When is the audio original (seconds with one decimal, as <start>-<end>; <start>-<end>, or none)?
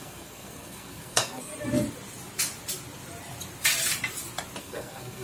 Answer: 1.5-4.6